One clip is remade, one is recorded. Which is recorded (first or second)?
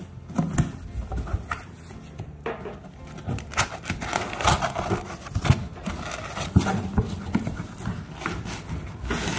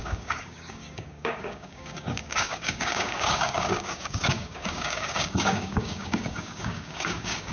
first